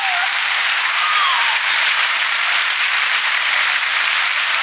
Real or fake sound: fake